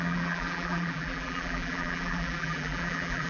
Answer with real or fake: fake